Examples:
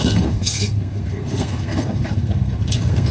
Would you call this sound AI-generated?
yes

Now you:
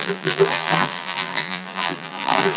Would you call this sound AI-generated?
yes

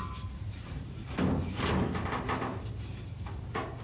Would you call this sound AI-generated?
no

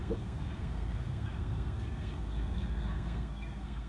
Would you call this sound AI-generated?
yes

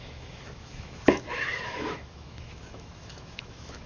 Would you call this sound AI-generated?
yes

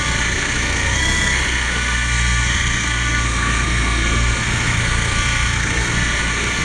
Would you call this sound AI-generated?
yes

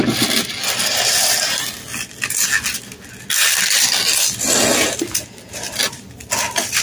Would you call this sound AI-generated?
no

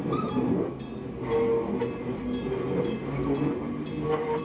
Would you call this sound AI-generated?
no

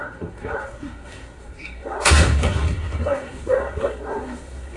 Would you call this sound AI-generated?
yes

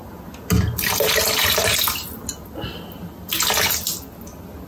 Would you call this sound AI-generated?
no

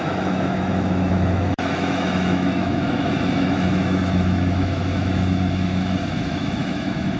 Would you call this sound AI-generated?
yes